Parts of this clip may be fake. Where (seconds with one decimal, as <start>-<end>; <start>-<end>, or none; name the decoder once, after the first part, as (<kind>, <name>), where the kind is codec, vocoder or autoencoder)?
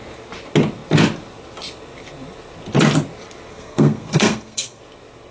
3.5-4.8 (codec, SNAC)